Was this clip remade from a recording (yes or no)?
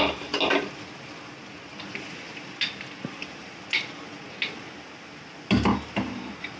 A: no